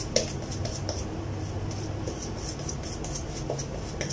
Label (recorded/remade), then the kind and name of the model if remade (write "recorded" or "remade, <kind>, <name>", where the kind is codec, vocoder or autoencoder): recorded